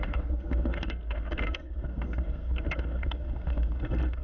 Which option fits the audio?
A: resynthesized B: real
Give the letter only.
A